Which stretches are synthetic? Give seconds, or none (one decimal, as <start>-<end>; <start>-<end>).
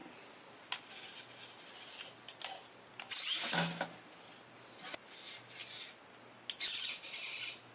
none